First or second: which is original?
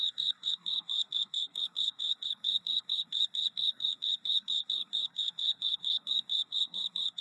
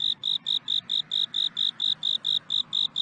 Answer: second